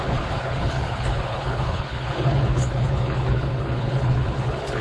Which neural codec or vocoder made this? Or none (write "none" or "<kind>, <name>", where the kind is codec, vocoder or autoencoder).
codec, HILCodec